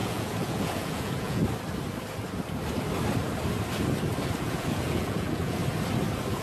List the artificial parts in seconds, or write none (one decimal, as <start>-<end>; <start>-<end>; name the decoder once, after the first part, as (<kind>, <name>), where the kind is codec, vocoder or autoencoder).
0.0-1.4 (vocoder, Vocos); 4.4-5.6